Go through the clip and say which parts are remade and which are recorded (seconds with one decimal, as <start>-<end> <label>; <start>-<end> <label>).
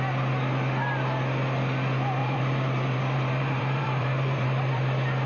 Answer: 0.0-2.2 recorded; 2.2-4.8 remade; 4.8-5.3 recorded